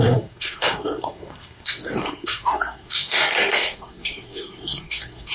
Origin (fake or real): fake